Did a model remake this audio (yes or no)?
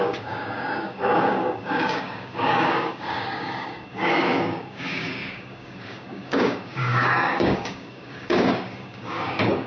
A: yes